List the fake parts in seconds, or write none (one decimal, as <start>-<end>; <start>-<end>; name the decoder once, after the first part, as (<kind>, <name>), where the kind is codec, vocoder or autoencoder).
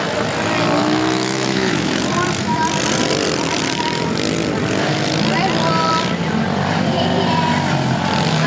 0.8-2.0 (autoencoder, DAC-VAE)